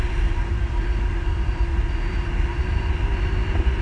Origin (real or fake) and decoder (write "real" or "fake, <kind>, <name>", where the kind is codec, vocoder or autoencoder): real